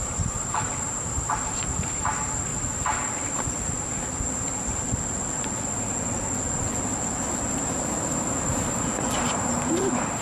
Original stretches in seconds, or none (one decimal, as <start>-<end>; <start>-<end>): 2.5-7.7